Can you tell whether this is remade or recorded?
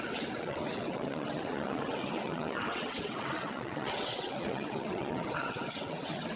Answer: remade